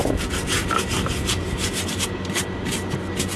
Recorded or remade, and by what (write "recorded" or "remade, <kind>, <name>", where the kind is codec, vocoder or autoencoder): recorded